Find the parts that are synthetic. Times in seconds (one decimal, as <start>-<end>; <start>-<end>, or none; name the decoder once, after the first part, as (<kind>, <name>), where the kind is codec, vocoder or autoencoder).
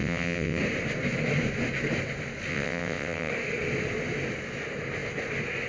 0.0-0.6 (vocoder, WaveNeXt); 2.5-3.3